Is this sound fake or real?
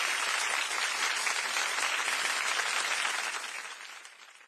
real